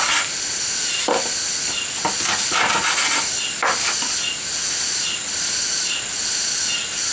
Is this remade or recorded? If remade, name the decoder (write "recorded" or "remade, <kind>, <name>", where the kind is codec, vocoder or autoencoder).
recorded